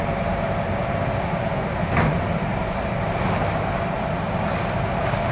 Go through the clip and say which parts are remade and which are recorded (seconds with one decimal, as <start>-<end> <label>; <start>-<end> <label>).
0.0-5.3 remade